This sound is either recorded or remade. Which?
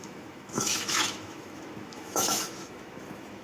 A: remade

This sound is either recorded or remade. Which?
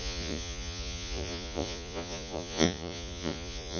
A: remade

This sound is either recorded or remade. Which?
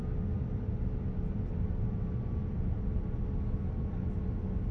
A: recorded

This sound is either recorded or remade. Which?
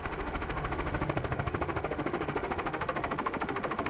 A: remade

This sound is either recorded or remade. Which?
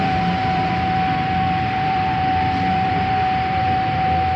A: remade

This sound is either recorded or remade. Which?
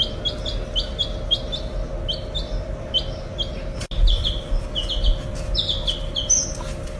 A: recorded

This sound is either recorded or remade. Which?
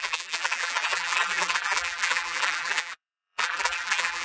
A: remade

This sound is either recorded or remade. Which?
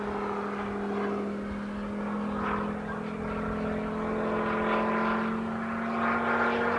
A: recorded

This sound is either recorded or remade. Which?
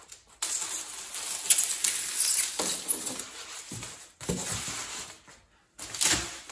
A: recorded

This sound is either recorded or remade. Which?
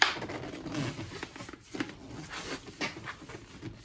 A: recorded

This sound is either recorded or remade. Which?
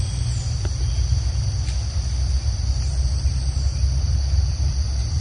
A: recorded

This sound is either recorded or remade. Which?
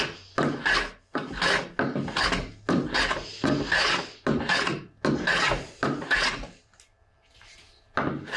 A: recorded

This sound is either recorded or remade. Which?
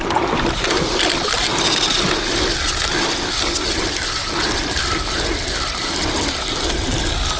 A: recorded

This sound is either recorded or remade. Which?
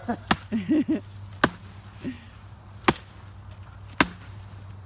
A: recorded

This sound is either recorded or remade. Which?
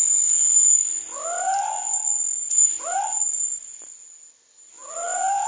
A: recorded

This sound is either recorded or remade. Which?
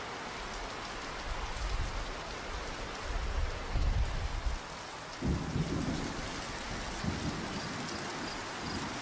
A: recorded